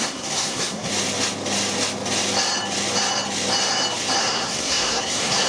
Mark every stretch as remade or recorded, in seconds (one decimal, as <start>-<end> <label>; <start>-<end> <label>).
0.0-0.9 remade; 0.9-4.2 recorded; 4.2-5.5 remade